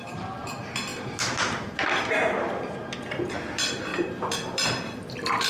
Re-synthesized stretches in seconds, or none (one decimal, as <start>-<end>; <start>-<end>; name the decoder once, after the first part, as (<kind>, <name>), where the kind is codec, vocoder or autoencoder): none